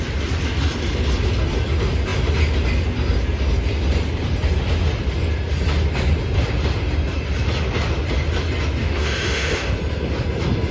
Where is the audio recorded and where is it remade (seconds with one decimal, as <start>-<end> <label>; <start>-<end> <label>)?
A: 0.0-8.8 recorded; 8.8-9.7 remade; 9.7-10.7 recorded